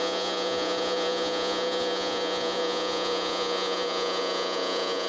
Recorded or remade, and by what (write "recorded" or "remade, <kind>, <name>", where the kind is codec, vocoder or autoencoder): remade, vocoder, Vocos